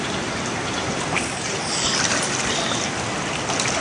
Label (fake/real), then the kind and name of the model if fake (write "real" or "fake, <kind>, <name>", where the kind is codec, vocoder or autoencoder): real